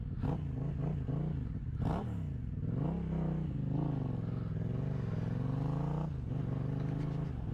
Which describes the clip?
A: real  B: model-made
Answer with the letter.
A